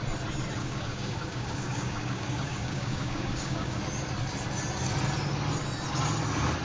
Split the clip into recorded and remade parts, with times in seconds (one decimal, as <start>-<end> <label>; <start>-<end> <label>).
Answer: 0.0-0.6 recorded; 0.6-3.8 remade; 3.8-6.6 recorded